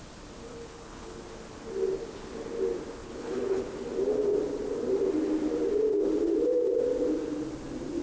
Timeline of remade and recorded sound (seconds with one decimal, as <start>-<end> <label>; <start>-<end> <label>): 0.0-0.5 recorded; 0.5-1.2 remade; 1.2-3.0 recorded; 3.0-3.6 remade; 3.6-8.0 recorded